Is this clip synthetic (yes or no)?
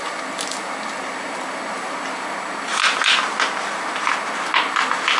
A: no